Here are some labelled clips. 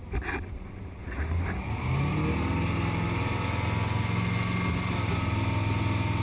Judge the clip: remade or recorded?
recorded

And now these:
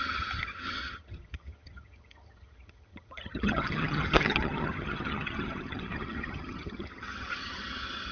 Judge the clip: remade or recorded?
remade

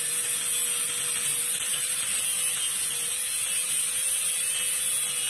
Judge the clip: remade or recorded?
recorded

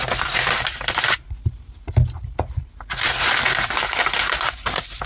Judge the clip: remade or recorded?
recorded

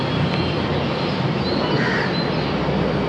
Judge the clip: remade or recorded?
recorded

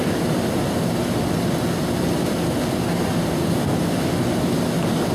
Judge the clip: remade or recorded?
recorded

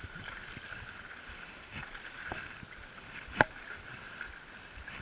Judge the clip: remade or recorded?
recorded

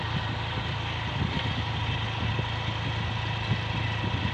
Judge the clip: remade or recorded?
recorded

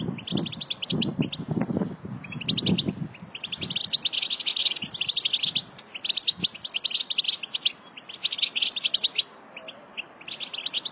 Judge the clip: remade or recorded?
recorded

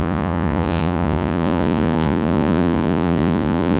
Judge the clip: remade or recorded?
remade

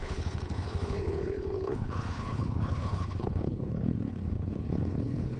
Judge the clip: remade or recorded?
remade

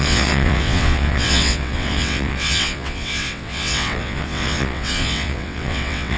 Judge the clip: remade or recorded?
remade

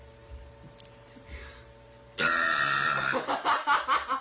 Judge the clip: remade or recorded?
recorded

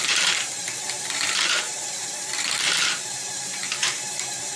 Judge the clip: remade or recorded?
remade